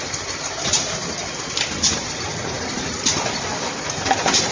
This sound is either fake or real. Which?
fake